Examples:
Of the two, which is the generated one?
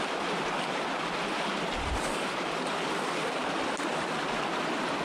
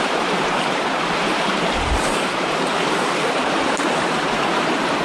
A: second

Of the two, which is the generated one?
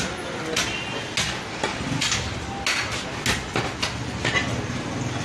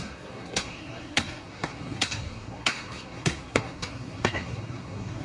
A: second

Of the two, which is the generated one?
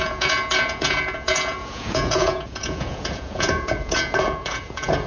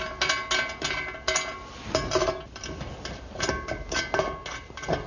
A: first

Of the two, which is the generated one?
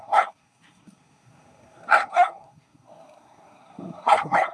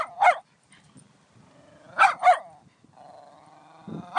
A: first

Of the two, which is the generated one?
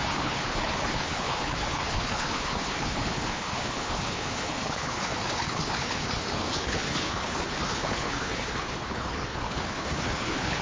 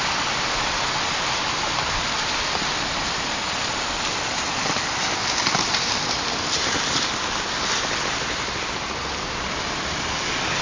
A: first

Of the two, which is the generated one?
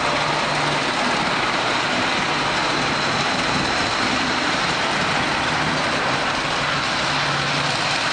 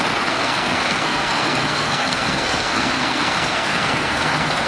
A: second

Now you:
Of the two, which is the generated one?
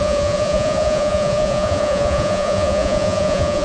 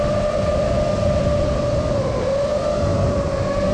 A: first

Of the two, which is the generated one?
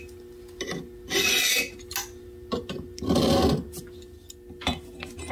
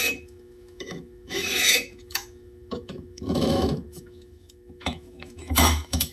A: second